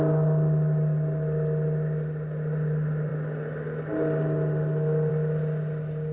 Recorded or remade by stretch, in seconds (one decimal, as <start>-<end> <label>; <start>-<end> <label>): 0.0-6.1 recorded